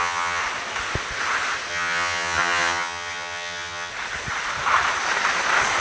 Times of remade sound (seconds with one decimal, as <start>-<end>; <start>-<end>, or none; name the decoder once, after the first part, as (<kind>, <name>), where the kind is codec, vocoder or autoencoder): 0.0-0.4 (vocoder, HiFi-GAN); 1.7-3.9